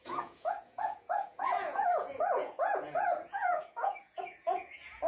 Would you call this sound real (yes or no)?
no